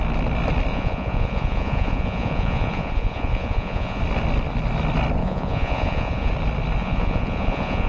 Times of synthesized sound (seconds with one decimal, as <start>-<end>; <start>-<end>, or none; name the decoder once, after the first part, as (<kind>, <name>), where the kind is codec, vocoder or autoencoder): 0.7-4.0 (vocoder, Vocos); 5.2-6.3; 6.8-7.9